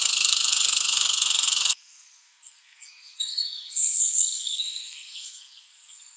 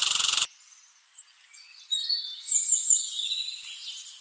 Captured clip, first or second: second